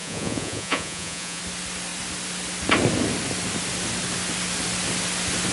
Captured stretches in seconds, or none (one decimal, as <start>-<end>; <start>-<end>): 1.4-5.5